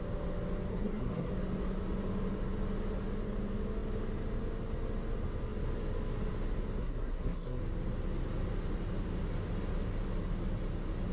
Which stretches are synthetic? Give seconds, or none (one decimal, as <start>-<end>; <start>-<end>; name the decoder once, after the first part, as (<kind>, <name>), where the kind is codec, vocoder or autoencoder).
0.7-1.3 (codec, SNAC); 6.8-7.6